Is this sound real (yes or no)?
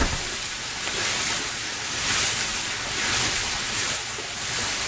yes